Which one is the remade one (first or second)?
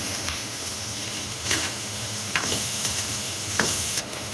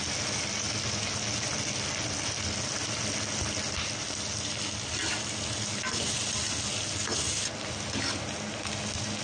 first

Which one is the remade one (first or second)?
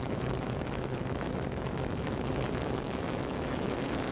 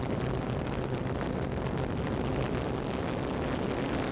first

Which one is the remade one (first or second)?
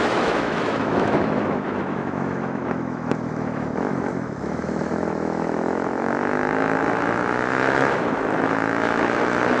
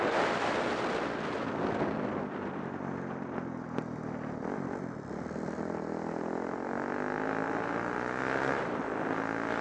first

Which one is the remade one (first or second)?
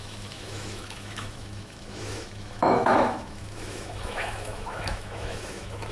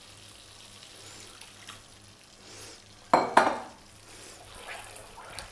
first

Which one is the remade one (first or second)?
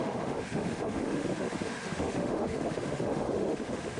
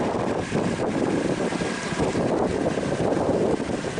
first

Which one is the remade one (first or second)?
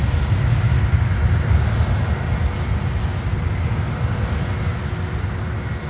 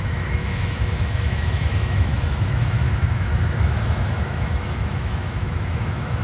second